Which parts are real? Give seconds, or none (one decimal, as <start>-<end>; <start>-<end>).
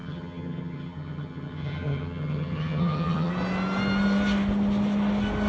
3.3-5.5